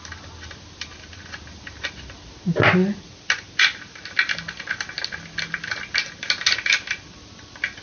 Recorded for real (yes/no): yes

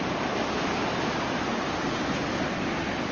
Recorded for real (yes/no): yes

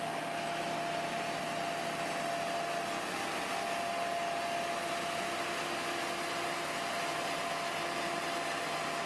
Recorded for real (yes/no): yes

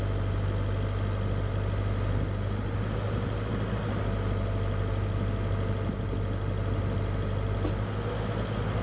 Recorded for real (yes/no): yes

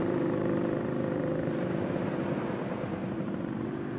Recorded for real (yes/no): no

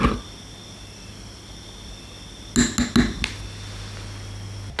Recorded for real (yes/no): yes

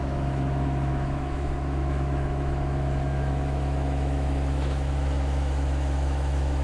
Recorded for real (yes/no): no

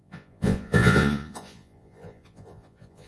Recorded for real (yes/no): no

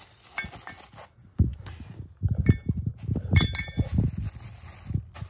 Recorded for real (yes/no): yes